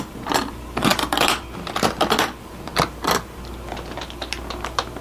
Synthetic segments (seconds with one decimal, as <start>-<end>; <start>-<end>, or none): none